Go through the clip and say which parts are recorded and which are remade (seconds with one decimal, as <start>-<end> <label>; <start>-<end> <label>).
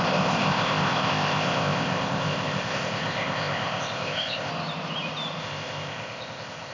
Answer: 0.0-4.5 remade; 4.5-5.4 recorded; 5.4-6.7 remade